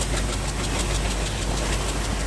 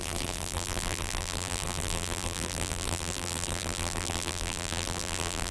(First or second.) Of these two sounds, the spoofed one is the second